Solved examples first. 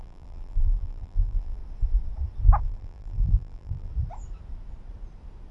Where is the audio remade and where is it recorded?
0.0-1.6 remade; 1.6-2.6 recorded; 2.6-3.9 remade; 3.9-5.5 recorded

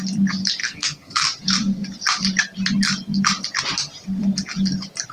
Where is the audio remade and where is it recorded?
0.0-0.6 recorded; 0.6-1.2 remade; 1.2-5.1 recorded